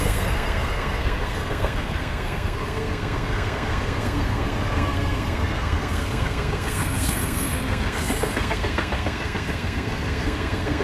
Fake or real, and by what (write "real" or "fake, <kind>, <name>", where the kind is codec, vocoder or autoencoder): fake, codec, SNAC